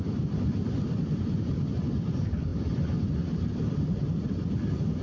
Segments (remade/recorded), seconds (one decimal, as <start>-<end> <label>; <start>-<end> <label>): 0.0-5.0 recorded